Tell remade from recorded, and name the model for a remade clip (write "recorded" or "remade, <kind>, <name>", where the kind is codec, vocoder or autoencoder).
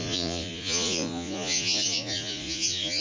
remade, vocoder, Vocos